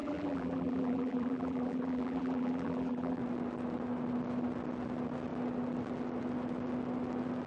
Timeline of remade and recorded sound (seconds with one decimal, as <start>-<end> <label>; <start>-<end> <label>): 0.0-3.2 remade; 3.2-7.5 recorded